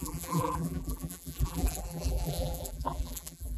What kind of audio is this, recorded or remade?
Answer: remade